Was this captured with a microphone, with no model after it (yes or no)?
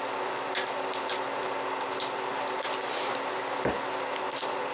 yes